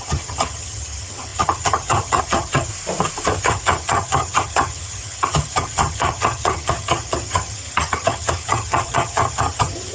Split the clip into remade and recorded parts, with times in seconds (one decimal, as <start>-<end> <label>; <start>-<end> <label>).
0.0-2.7 remade; 2.7-3.4 recorded; 3.4-9.9 remade